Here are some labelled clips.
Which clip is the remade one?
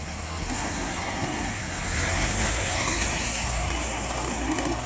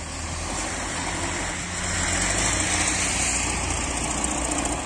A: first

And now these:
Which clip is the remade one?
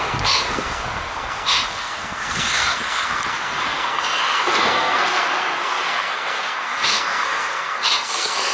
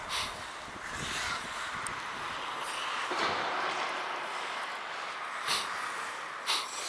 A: first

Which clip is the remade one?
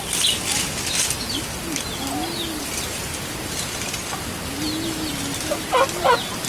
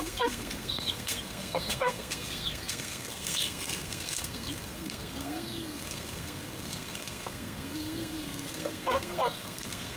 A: second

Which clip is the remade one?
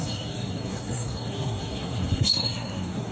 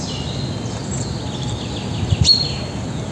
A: first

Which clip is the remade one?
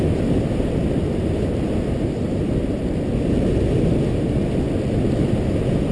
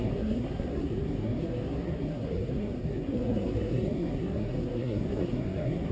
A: second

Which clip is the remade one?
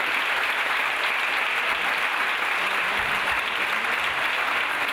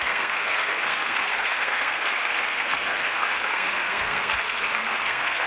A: second